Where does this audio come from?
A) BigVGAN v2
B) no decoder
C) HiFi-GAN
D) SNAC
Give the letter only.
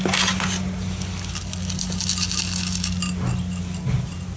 B